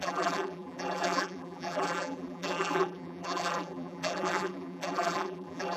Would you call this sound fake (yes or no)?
yes